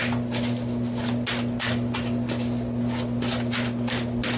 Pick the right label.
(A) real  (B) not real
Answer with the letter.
A